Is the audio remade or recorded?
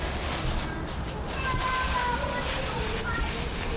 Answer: recorded